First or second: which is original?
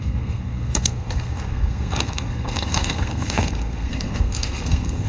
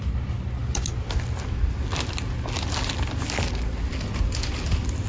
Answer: second